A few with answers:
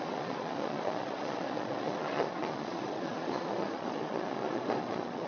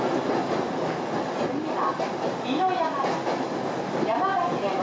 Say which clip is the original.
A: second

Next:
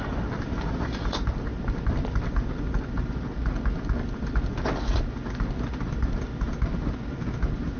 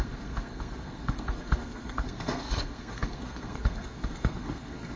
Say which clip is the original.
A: first